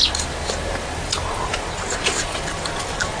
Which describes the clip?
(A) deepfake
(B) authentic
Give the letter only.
B